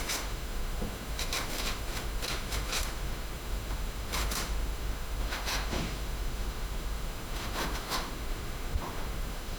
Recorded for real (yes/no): no